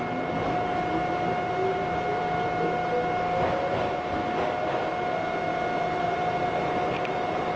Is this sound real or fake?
real